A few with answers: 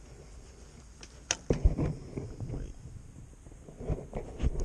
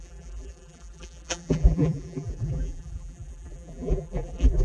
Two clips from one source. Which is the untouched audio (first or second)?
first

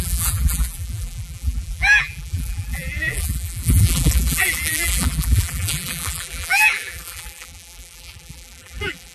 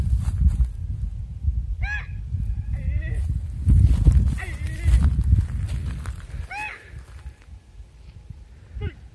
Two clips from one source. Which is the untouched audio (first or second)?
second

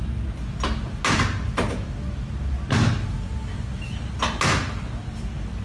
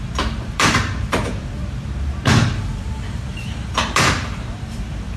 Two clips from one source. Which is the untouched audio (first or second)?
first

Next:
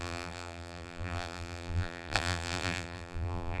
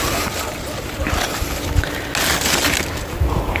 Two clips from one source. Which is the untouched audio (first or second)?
second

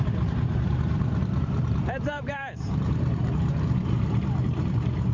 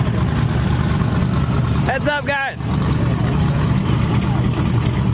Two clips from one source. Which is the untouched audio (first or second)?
second